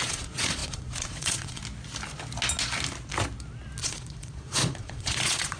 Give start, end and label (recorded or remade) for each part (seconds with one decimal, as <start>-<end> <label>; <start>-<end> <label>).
0.0-1.6 remade; 1.6-3.8 recorded; 3.8-5.6 remade